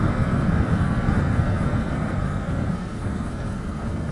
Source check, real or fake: fake